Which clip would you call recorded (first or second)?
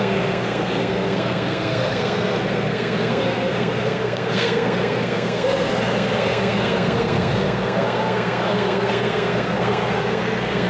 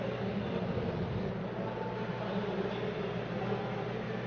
second